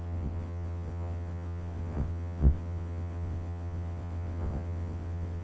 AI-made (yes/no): yes